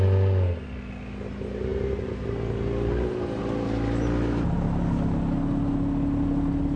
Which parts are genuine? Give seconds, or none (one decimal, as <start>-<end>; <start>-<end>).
0.0-6.8